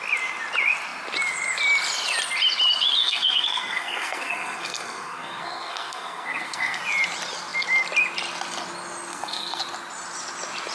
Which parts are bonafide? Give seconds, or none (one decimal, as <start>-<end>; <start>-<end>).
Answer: 0.0-3.0; 6.8-9.1; 9.6-10.7